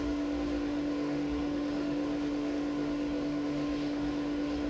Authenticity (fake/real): fake